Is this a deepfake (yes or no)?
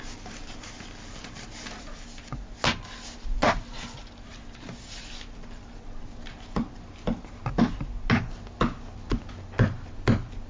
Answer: no